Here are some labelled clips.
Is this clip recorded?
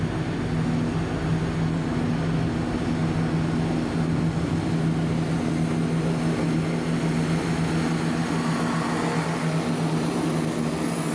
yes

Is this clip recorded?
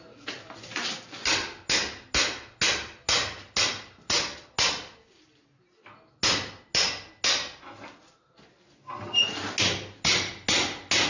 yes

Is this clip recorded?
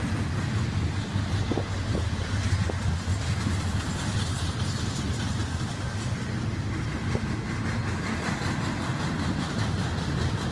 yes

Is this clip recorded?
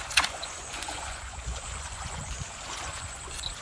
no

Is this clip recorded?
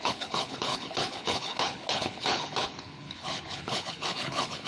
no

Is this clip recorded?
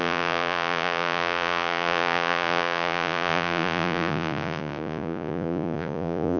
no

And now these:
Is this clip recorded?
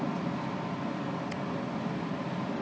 yes